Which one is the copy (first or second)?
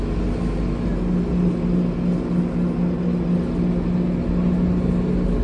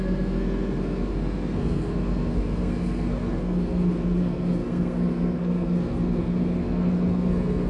second